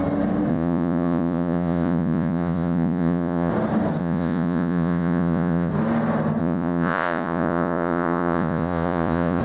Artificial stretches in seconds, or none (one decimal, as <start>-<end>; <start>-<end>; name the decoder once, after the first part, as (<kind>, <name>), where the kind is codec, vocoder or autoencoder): 0.5-3.5 (vocoder, Vocos); 4.0-5.7; 6.4-9.4